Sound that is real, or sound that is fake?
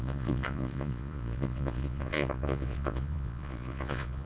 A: fake